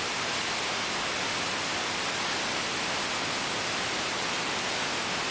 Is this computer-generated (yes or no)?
no